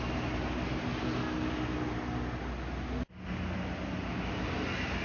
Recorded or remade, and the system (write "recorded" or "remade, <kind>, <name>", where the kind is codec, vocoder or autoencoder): recorded